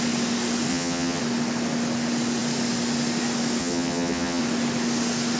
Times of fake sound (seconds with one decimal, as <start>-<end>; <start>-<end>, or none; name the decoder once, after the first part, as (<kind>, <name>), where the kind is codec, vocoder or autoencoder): 0.7-1.2 (vocoder, HiFi-GAN); 3.6-4.4